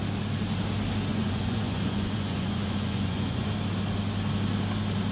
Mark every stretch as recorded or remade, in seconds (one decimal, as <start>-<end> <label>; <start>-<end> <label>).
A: 0.0-1.1 recorded; 1.1-3.5 remade; 3.5-5.1 recorded